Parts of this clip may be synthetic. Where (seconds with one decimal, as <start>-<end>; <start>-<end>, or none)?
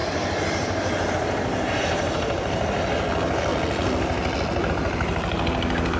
none